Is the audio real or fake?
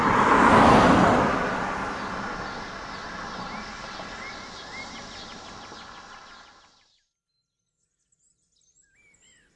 real